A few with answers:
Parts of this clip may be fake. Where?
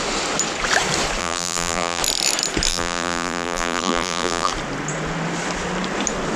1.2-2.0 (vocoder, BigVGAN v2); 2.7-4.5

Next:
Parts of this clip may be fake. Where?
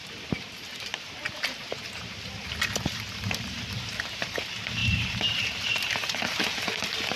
0.0-4.3 (vocoder, BigVGAN v2); 4.8-7.2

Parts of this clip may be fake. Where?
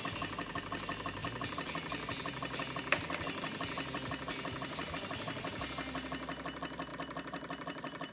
1.2-4.9 (vocoder, BigVGAN v2); 6.9-8.1